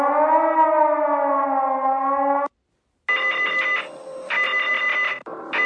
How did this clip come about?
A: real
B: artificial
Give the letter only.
A